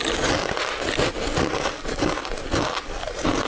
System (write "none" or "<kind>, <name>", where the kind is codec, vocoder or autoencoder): none